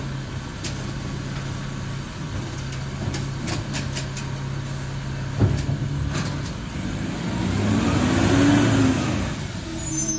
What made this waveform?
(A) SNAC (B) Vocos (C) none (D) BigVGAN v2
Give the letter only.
C